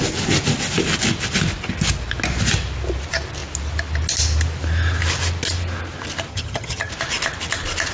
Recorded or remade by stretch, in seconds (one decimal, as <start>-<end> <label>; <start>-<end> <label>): 0.0-6.3 recorded; 6.3-6.9 remade; 6.9-7.9 recorded